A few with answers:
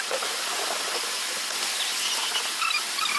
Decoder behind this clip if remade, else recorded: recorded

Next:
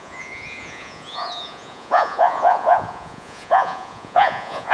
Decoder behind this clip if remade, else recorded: remade, vocoder, Vocos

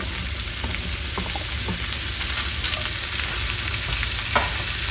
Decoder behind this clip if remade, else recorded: recorded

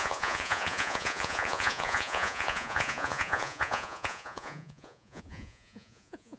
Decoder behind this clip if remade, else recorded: remade, vocoder, Vocos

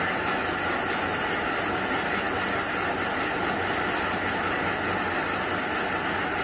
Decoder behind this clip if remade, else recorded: recorded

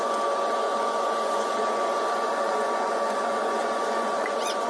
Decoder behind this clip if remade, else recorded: remade, vocoder, Vocos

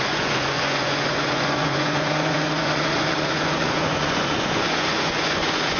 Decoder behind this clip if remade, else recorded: remade, vocoder, Vocos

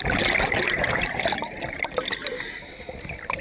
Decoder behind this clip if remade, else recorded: recorded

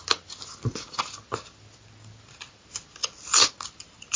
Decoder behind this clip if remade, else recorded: recorded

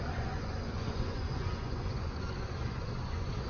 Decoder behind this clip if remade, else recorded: remade, vocoder, Vocos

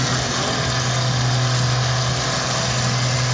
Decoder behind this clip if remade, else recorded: recorded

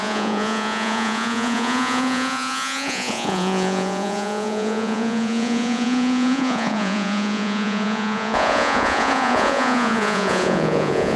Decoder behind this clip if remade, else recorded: remade, vocoder, Vocos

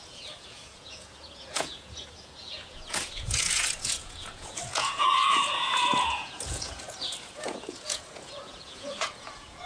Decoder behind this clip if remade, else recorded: remade, vocoder, Vocos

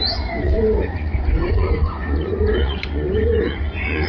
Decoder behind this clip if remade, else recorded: remade, vocoder, Vocos